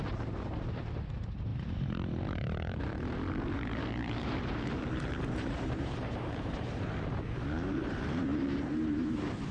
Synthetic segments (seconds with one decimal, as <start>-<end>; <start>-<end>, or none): 0.0-9.5